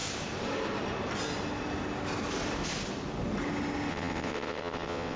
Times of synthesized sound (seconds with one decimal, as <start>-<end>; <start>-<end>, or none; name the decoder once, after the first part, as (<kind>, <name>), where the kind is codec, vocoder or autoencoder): 3.9-5.2 (vocoder, WaveNeXt)

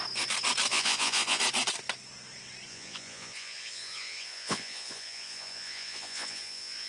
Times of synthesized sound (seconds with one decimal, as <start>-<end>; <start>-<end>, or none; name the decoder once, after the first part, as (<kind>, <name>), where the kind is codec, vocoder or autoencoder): 0.7-1.4 (vocoder, Vocos); 2.7-6.9

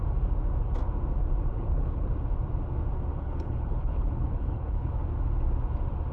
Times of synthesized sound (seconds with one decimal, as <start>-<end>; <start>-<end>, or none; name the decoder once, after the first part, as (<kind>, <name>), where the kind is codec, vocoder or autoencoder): 1.5-2.1 (codec, HILCodec); 3.1-4.9